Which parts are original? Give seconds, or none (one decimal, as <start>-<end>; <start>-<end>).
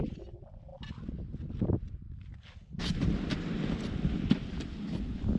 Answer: 0.0-5.4